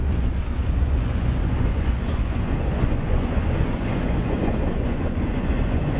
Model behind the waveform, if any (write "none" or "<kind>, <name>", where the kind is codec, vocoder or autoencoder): vocoder, Vocos